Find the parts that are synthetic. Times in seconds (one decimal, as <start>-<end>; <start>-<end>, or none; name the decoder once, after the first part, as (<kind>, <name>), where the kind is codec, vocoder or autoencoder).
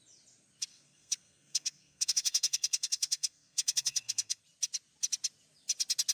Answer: 0.7-4.4 (codec, SNAC)